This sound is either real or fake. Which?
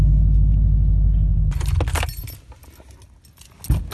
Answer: real